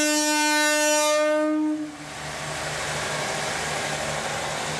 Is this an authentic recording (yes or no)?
yes